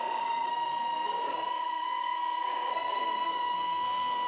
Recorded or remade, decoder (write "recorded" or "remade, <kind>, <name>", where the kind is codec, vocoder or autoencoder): remade, codec, SNAC